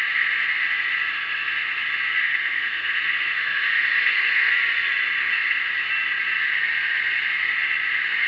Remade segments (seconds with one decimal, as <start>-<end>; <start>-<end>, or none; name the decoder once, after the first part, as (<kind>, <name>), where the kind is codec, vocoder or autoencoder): 2.2-4.5 (codec, SNAC); 5.2-5.7